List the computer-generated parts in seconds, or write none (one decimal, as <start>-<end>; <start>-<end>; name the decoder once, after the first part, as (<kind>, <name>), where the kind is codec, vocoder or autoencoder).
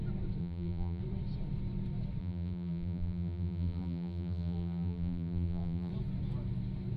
0.4-1.0 (vocoder, BigVGAN v2); 2.2-5.9